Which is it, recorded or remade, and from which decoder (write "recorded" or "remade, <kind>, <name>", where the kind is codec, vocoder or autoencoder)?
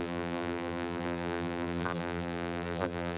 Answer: remade, vocoder, BigVGAN v2